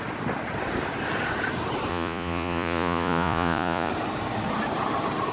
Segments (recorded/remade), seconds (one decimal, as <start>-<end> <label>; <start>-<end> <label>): 0.0-1.9 recorded; 1.9-3.9 remade; 3.9-5.3 recorded